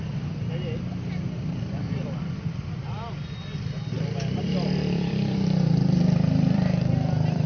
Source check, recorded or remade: remade